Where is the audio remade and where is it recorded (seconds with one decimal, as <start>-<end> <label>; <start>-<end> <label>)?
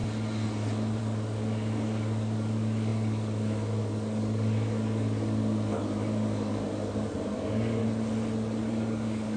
0.0-1.0 recorded; 1.0-7.8 remade; 7.8-8.7 recorded; 8.7-9.4 remade